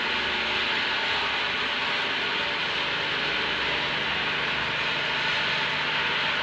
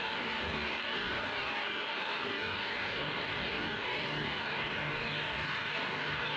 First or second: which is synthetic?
second